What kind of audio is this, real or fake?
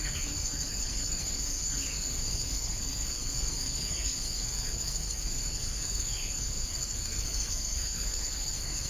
fake